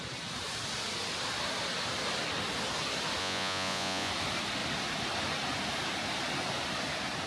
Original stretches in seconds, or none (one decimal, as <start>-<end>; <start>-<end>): 0.0-3.2; 4.1-7.3